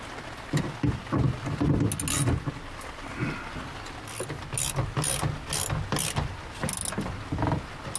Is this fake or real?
real